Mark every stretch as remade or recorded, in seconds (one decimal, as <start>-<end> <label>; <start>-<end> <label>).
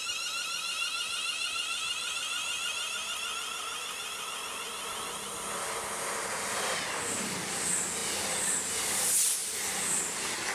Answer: 0.0-10.5 recorded